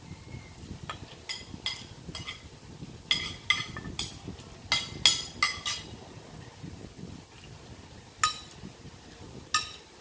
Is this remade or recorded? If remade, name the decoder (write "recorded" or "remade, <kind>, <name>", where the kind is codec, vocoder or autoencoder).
recorded